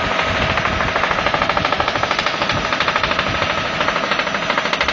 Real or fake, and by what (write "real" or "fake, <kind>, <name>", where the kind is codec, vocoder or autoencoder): real